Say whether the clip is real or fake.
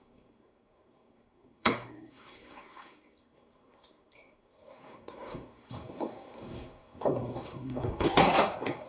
fake